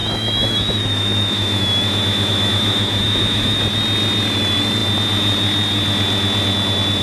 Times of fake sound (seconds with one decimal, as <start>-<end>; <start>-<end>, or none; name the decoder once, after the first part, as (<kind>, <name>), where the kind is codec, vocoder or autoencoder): 0.0-3.6 (autoencoder, DAC-VAE)

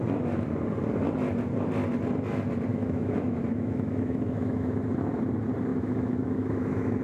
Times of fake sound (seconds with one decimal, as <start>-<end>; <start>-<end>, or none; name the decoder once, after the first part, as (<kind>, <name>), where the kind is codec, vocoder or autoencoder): 2.7-4.8 (autoencoder, DAC-VAE); 5.7-7.0